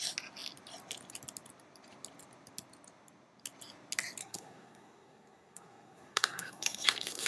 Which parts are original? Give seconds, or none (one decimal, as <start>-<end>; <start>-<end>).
0.0-4.2